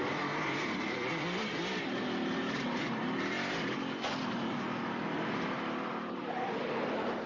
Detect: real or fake real